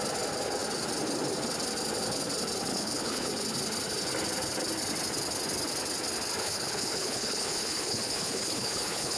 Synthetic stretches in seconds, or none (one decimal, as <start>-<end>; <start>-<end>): 2.7-3.3; 6.4-9.2